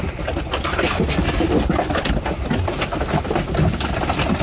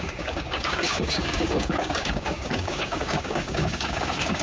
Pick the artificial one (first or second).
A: second